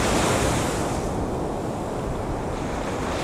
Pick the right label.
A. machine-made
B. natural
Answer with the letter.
B